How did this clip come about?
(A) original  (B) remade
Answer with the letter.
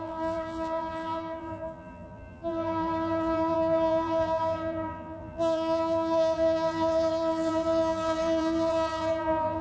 B